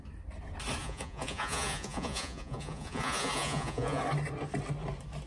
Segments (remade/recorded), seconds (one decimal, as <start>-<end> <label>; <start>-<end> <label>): 0.0-0.8 recorded; 0.8-4.0 remade; 4.0-5.3 recorded